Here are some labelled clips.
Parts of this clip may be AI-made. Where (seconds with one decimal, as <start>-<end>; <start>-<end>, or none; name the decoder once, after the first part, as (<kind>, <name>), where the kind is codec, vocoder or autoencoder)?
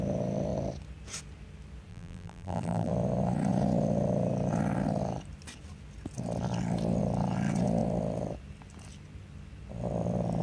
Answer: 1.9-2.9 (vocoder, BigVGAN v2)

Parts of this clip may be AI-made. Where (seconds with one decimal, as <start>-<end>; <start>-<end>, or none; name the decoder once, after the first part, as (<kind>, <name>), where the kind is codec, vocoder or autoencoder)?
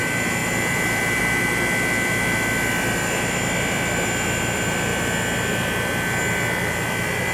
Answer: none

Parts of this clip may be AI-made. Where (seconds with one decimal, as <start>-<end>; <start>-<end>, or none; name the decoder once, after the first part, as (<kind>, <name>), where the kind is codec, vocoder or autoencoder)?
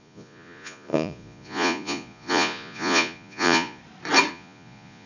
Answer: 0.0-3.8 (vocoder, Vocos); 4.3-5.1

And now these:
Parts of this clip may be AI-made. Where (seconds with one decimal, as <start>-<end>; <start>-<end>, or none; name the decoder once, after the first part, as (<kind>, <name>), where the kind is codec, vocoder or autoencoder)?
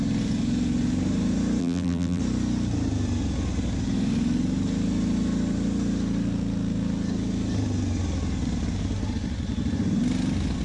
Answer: 1.6-2.2 (vocoder, BigVGAN v2)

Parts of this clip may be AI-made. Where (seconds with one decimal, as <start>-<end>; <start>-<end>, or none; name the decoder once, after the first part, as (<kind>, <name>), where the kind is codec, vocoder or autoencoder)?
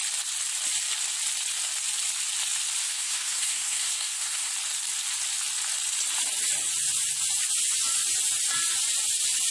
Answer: 2.8-4.5 (codec, SNAC)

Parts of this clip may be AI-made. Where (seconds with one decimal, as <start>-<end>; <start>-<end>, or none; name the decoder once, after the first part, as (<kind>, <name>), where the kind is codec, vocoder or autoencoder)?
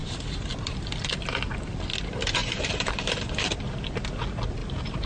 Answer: 2.4-3.3 (vocoder, BigVGAN v2); 4.6-5.1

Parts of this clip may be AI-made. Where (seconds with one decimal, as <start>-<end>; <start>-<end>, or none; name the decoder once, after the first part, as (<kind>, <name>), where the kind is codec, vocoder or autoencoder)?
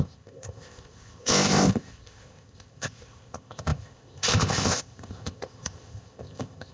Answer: 0.0-6.7 (codec, ZipCodec)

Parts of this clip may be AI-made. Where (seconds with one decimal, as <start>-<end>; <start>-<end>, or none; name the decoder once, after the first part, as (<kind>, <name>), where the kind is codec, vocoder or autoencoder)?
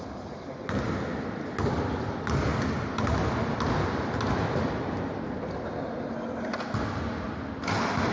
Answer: none